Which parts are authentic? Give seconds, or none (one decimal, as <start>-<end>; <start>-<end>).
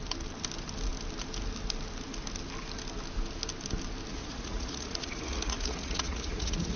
0.0-4.1